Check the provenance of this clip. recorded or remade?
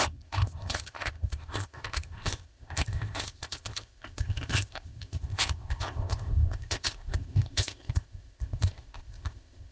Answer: remade